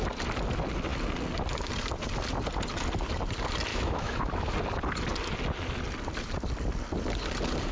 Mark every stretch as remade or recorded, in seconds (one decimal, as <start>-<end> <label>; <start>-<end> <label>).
0.0-3.7 recorded; 3.7-4.5 remade; 4.5-7.7 recorded